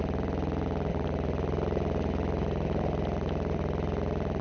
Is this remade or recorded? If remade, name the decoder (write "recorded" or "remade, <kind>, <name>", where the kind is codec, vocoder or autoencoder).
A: recorded